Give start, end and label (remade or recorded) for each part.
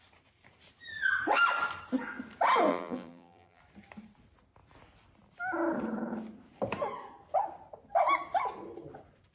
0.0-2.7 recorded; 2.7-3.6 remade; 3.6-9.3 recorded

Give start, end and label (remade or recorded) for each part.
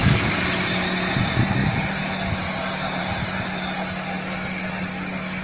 0.0-5.4 recorded